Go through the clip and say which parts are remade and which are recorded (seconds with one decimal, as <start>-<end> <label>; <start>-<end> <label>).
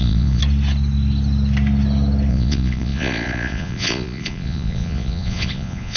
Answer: 0.0-0.4 remade; 0.4-2.3 recorded; 2.3-6.0 remade